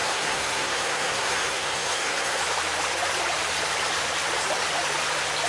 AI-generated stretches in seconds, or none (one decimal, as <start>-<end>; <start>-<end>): 0.0-2.4